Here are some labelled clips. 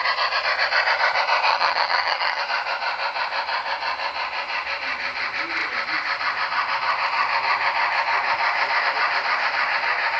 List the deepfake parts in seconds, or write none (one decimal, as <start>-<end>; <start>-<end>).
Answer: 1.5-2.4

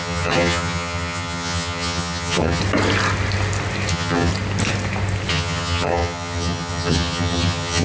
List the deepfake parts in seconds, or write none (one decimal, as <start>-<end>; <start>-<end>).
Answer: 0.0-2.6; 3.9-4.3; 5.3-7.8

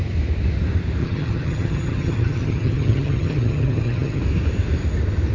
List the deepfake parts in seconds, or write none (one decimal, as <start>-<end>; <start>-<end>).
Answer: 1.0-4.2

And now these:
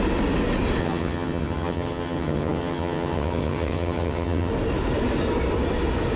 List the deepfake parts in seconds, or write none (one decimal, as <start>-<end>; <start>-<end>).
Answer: 0.8-4.5

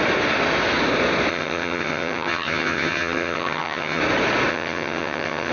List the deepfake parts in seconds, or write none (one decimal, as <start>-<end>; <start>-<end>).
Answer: 1.3-4.0; 4.5-5.5

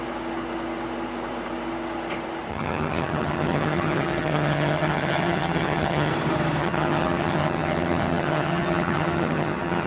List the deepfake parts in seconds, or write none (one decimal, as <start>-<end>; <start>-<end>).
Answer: 2.5-6.1; 6.6-9.9